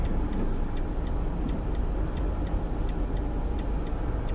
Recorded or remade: recorded